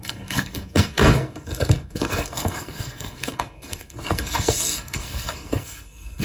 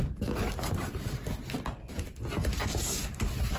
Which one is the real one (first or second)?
second